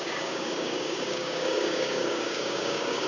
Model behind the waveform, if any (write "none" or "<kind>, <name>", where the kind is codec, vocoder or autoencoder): codec, DAC